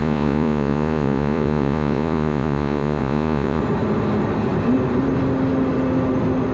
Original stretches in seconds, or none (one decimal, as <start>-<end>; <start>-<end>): 3.6-6.5